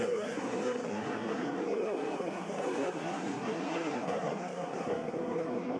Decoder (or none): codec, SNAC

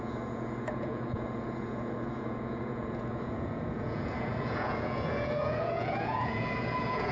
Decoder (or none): vocoder, Vocos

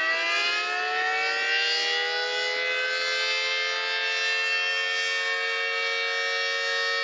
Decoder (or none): none